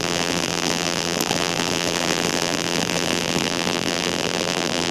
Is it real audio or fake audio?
fake